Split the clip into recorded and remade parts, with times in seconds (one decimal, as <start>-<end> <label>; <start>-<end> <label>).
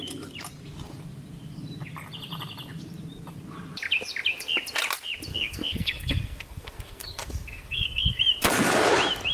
0.0-5.3 recorded; 5.3-8.2 remade; 8.2-9.3 recorded